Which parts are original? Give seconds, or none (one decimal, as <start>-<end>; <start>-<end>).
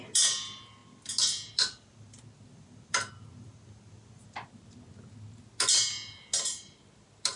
0.0-7.4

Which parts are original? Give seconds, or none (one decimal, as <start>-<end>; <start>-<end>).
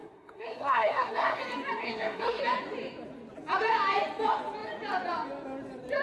1.4-1.8; 2.4-6.0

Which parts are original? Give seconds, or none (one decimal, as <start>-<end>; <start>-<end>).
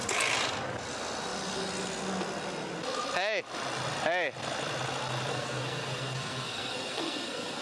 0.0-5.3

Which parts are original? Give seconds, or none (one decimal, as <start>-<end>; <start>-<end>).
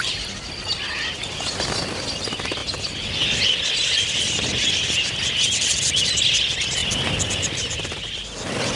0.0-8.8